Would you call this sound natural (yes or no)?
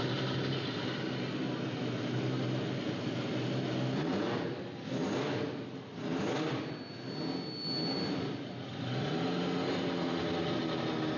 yes